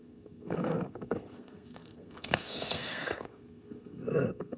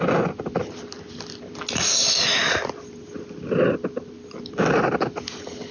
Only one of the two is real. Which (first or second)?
second